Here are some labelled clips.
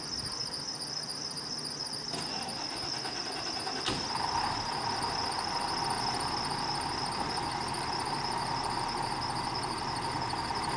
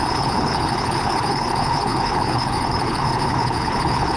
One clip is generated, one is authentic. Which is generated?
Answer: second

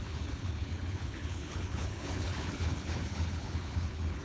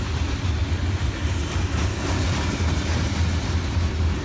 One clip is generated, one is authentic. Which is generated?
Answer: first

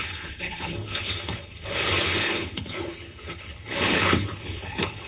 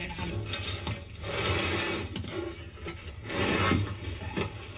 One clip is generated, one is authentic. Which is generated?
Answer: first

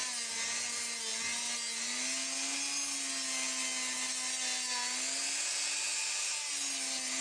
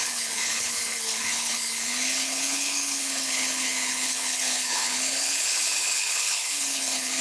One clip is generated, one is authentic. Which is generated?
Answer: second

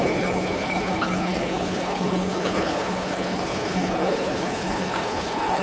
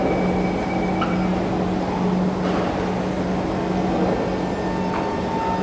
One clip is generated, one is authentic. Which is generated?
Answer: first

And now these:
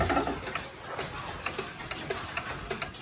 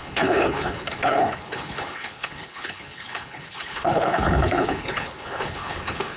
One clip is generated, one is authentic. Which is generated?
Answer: second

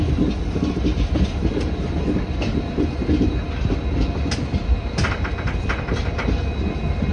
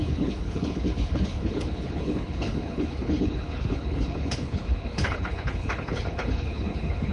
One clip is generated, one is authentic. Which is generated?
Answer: second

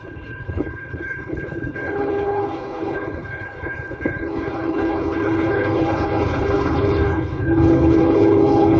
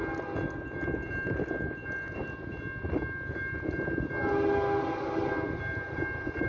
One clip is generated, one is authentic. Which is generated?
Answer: first